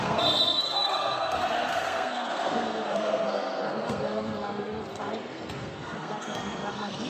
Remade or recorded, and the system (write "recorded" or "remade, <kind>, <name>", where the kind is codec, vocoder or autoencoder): remade, codec, SNAC